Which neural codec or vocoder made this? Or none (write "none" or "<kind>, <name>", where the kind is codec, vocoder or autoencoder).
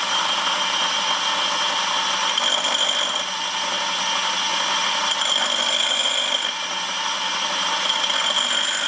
none